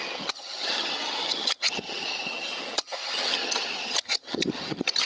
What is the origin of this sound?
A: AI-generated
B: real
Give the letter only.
A